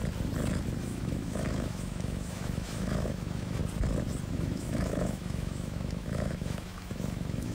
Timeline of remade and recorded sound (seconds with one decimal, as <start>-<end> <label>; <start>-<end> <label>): 0.0-0.8 recorded; 0.8-3.6 remade; 3.6-4.3 recorded; 4.3-7.5 remade